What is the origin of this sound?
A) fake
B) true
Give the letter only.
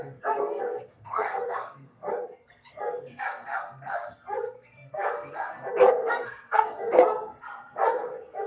A